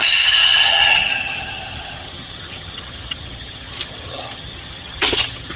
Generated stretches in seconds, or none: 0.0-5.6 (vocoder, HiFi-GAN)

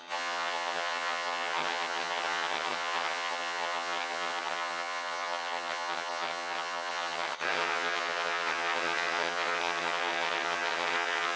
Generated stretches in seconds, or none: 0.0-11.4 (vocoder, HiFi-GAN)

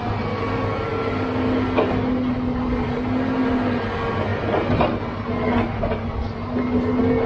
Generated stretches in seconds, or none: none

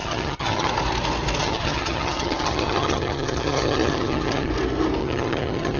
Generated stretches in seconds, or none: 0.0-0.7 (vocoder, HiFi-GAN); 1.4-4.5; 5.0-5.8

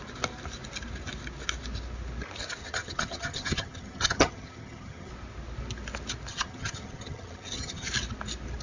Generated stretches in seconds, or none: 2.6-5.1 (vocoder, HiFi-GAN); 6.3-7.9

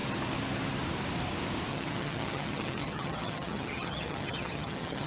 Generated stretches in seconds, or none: 1.7-5.1 (vocoder, HiFi-GAN)

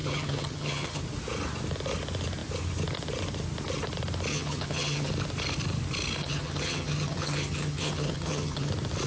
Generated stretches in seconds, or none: 0.0-1.0 (vocoder, HiFi-GAN); 4.3-5.1; 6.2-8.7